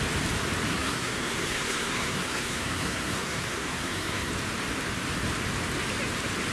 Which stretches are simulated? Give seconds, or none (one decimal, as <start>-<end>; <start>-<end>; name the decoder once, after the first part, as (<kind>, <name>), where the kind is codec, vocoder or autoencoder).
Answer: 0.7-4.3 (codec, SNAC)